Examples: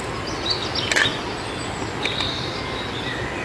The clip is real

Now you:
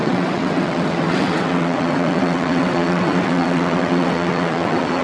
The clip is fake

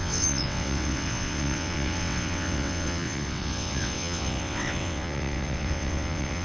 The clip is fake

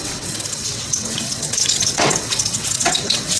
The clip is fake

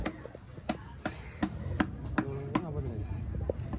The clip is real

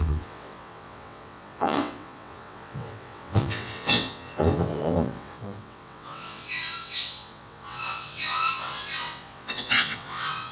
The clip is fake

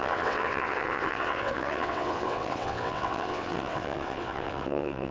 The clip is fake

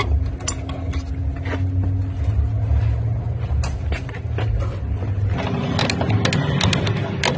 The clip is real